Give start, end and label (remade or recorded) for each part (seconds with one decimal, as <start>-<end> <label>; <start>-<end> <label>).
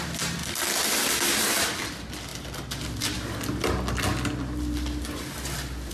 0.0-5.9 recorded